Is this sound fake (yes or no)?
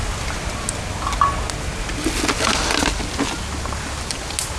no